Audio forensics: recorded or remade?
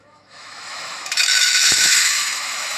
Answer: remade